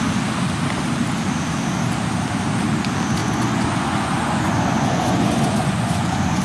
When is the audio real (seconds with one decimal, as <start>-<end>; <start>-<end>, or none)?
0.0-3.2